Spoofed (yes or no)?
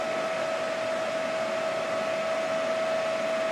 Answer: no